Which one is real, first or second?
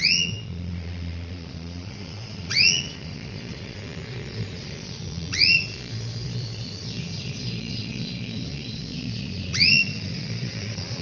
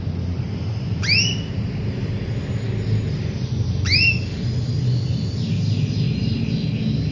second